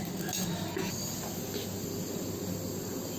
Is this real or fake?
real